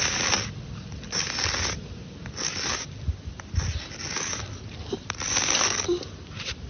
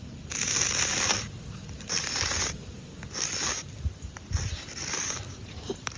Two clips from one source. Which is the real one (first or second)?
first